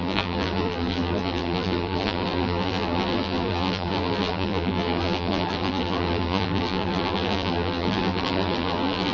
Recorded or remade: remade